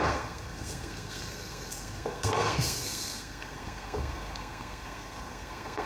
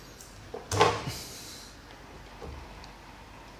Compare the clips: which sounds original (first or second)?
second